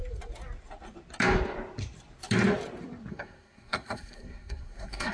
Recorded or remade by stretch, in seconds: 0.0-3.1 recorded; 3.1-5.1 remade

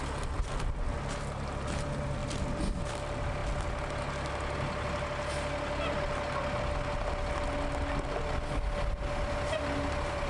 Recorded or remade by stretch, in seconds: 0.0-10.3 recorded

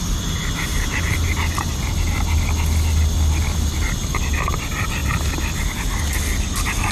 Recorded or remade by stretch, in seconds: 0.0-6.9 recorded

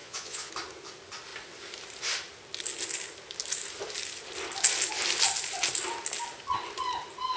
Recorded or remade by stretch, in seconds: 0.0-0.5 remade; 0.5-7.4 recorded

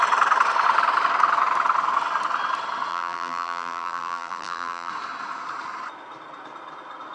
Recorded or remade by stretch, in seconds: 0.0-2.9 recorded; 2.9-4.9 remade; 4.9-7.1 recorded

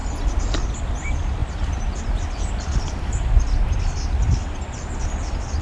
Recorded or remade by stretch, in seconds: 0.0-5.6 recorded